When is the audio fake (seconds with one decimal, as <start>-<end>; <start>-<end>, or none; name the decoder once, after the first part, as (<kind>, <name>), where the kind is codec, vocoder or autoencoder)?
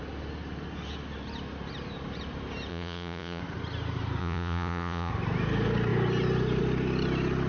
2.7-3.4 (vocoder, Vocos); 4.2-5.1